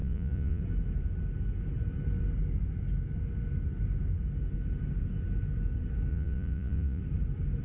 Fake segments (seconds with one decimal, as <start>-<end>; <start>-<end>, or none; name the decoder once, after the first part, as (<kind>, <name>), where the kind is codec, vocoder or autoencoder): 0.0-0.6 (vocoder, Vocos); 6.1-7.0